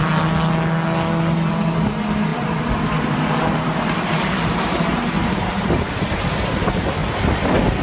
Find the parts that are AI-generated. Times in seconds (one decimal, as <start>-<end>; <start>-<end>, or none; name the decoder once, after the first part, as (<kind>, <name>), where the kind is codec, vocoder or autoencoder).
2.3-5.5 (vocoder, BigVGAN v2); 7.0-7.8